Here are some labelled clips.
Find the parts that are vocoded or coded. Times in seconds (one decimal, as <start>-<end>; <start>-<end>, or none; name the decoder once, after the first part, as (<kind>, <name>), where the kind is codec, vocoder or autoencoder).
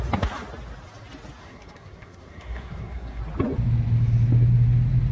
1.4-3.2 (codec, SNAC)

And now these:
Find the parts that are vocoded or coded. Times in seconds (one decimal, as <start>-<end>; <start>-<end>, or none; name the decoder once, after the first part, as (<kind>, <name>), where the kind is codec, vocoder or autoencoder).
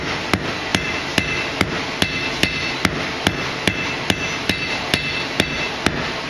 none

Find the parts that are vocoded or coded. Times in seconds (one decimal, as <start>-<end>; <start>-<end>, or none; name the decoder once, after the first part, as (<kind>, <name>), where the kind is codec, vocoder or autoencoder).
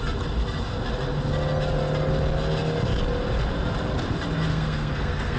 4.5-5.4 (codec, SNAC)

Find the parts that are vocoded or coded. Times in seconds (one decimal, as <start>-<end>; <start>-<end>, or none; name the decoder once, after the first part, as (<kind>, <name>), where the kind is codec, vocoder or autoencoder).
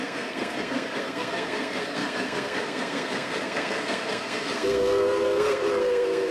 0.0-6.3 (codec, SNAC)